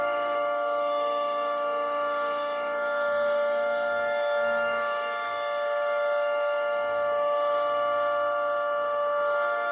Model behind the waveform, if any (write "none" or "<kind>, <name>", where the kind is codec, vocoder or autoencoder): autoencoder, DAC-VAE